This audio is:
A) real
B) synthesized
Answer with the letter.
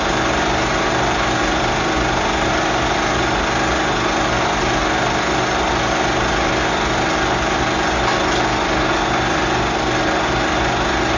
A